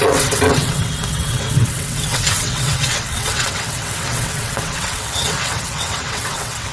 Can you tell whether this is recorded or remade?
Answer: remade